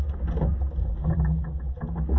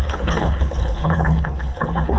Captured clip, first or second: first